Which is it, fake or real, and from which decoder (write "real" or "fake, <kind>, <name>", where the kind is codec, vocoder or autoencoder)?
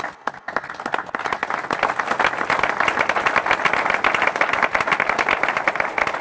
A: real